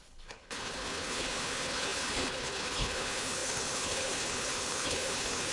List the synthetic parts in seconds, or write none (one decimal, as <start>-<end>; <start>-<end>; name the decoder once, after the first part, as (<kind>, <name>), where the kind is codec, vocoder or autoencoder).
0.0-5.5 (codec, HILCodec)